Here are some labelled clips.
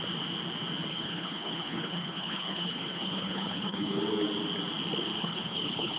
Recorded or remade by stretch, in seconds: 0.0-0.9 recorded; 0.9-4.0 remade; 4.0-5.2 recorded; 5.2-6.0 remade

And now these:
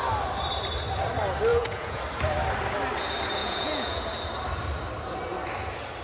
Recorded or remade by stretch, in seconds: 0.0-1.5 recorded; 1.5-2.0 remade; 2.0-3.4 recorded; 3.4-4.0 remade; 4.0-6.0 recorded

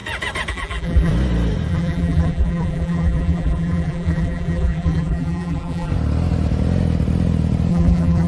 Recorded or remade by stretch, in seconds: 0.0-0.5 recorded; 0.5-1.1 remade; 1.1-1.7 recorded; 1.7-5.9 remade; 5.9-7.7 recorded; 7.7-8.3 remade

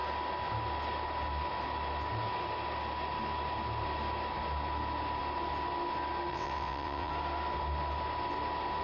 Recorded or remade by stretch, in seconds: 0.0-6.3 recorded; 6.3-7.1 remade; 7.1-8.8 recorded

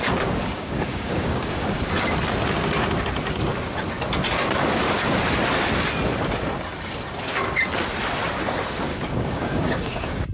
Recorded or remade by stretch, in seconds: 0.0-0.4 recorded; 0.4-1.8 remade; 1.8-8.9 recorded; 8.9-10.3 remade

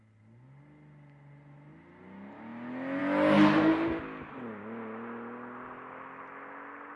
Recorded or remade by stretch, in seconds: 0.0-7.0 recorded

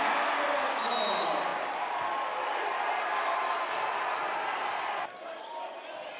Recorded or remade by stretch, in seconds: 0.0-6.2 recorded